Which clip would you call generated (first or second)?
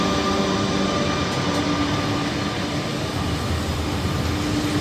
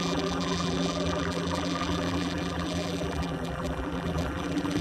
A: second